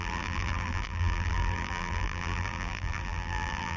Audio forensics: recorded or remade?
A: remade